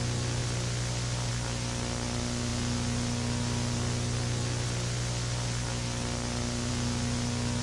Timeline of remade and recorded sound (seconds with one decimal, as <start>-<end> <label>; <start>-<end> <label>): 0.0-7.6 recorded

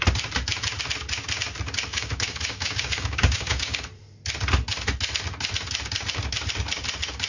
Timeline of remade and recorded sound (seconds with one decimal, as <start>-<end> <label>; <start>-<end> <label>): 0.0-1.9 recorded; 1.9-3.8 remade; 3.8-7.3 recorded